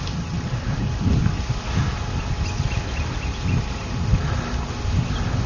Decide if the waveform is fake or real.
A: real